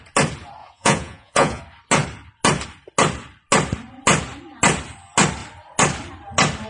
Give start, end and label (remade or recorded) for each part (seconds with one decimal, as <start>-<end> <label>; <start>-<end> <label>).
0.0-0.6 recorded; 0.6-1.6 remade; 1.6-6.7 recorded